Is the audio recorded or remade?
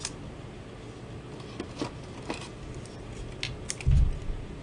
recorded